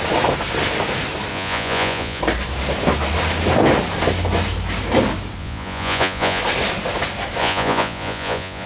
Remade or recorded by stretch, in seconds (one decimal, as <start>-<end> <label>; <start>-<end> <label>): 0.0-1.3 recorded; 1.3-2.2 remade; 2.2-5.4 recorded; 5.4-6.4 remade; 6.4-7.4 recorded; 7.4-8.7 remade